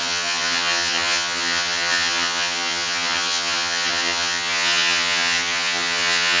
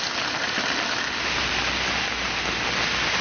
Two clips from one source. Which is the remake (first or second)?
first